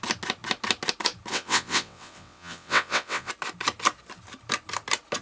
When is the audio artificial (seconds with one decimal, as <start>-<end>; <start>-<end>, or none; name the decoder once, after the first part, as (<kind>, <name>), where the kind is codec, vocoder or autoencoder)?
1.3-3.3 (vocoder, WaveNeXt)